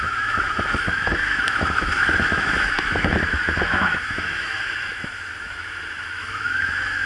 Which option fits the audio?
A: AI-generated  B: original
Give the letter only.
A